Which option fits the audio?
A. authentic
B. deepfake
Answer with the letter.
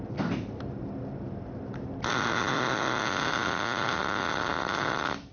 A